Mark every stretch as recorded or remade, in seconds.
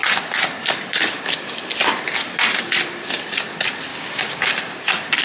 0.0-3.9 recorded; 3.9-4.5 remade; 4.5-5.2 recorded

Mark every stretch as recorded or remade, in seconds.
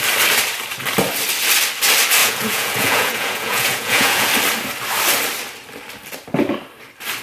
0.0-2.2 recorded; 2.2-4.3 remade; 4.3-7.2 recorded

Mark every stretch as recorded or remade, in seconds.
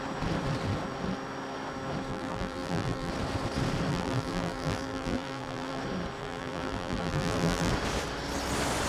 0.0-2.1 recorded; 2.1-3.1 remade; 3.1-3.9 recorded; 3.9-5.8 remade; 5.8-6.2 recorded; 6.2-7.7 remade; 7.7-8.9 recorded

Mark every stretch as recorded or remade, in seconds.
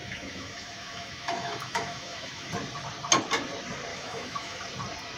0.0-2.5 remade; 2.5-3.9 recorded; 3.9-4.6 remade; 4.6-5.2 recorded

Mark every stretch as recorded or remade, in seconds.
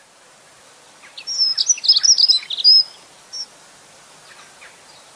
0.0-5.2 recorded